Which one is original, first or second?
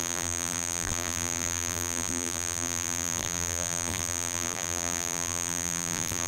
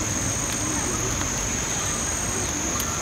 second